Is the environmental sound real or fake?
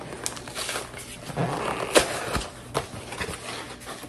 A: real